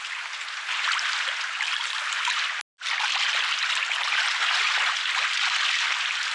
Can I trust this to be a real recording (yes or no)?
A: yes